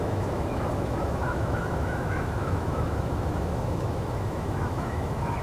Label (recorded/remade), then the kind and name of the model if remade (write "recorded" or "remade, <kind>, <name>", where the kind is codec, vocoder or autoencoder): remade, autoencoder, DAC-VAE